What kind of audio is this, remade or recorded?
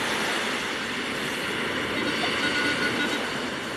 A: recorded